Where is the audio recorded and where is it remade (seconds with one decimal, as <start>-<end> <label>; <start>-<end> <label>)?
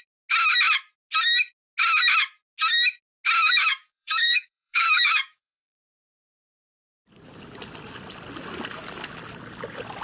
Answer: 0.0-3.4 recorded; 3.4-6.3 remade; 6.3-10.0 recorded